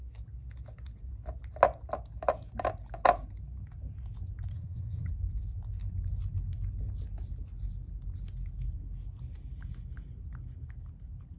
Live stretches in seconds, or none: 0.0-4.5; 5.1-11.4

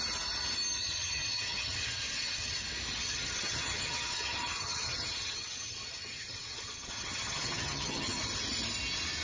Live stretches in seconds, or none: 0.0-0.8; 2.6-3.0; 8.2-9.2

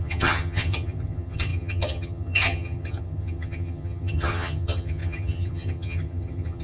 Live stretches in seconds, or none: none

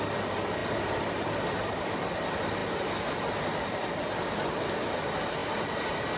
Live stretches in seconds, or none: 0.0-6.2

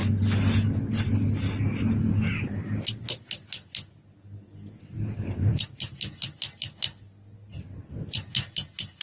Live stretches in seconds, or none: 0.0-9.0

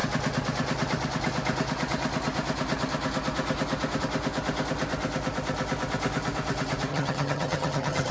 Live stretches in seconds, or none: 0.0-6.9

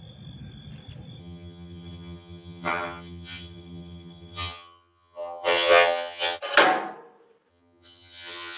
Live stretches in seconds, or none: 0.0-1.2; 6.4-7.5